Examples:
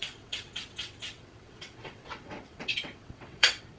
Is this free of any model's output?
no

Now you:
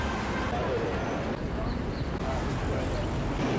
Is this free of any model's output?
yes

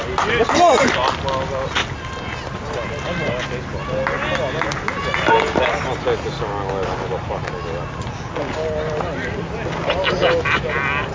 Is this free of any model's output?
yes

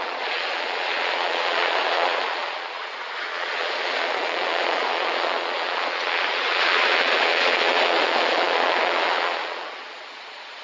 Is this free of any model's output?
no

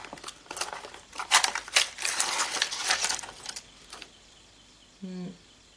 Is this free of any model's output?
yes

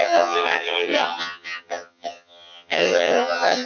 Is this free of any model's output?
no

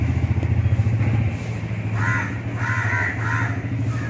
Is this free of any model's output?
yes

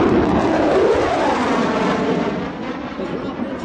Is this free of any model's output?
yes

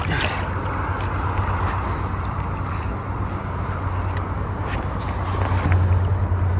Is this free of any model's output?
yes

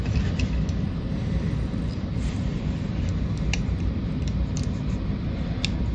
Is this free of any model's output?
yes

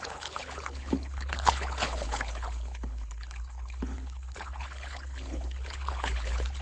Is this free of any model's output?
no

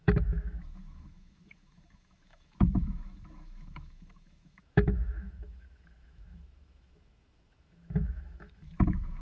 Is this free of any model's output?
no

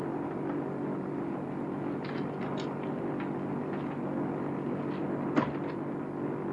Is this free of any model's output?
yes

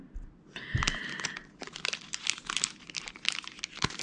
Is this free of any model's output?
yes